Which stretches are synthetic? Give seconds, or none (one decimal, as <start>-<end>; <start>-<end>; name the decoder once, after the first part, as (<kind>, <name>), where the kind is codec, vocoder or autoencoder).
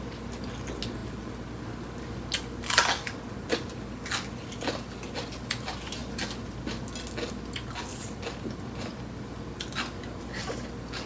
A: none